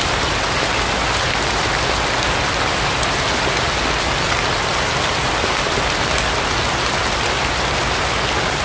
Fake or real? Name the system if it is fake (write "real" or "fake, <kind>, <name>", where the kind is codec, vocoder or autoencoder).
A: real